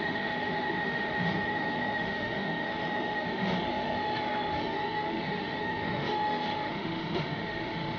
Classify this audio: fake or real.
fake